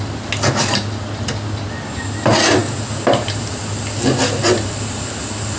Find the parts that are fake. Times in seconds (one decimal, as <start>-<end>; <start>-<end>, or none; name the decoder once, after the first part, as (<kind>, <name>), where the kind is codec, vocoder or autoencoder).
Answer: none